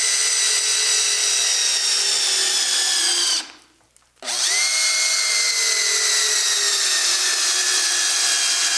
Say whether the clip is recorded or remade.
recorded